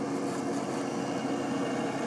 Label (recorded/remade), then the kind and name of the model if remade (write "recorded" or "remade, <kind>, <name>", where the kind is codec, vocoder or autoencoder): recorded